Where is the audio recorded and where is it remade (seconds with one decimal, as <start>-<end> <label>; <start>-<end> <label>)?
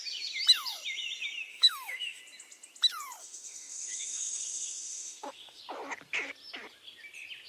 0.0-1.5 recorded; 1.5-2.2 remade; 2.2-3.2 recorded; 3.2-5.6 remade; 5.6-7.5 recorded